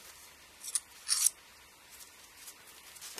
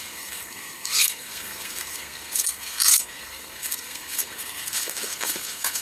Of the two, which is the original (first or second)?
first